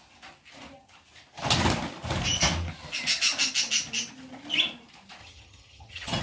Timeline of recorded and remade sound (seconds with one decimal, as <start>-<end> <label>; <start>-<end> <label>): 0.0-5.2 recorded; 5.2-6.2 remade